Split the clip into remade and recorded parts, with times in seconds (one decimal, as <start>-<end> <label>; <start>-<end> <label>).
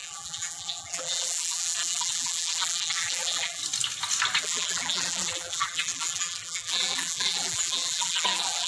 0.0-3.6 remade; 3.6-4.4 recorded; 4.4-8.7 remade